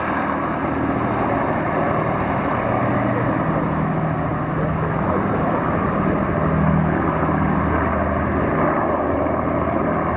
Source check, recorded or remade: recorded